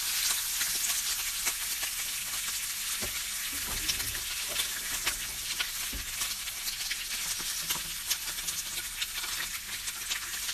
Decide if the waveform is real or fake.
real